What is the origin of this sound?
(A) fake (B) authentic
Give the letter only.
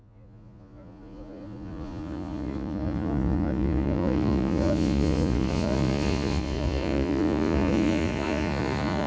A